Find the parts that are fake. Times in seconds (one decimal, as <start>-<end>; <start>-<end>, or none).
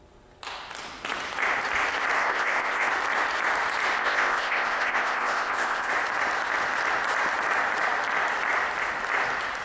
2.2-2.9; 4.0-5.9